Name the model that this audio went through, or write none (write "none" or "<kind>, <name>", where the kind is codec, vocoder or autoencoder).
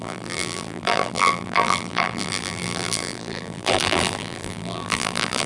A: vocoder, BigVGAN v2